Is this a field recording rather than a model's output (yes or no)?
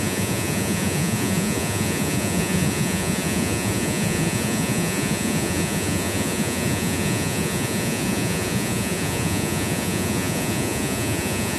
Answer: no